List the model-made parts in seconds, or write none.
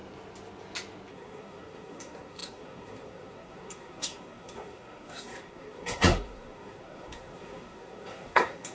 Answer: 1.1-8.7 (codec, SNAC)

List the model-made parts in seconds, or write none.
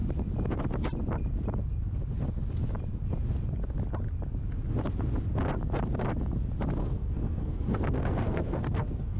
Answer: 6.8-9.2 (codec, SNAC)